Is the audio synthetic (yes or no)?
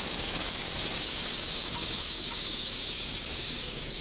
yes